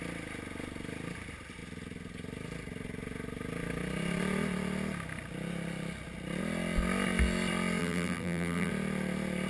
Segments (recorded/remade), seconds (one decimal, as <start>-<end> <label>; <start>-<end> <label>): 0.0-7.8 recorded; 7.8-8.7 remade; 8.7-9.5 recorded